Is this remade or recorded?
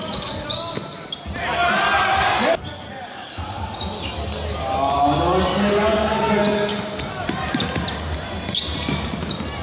recorded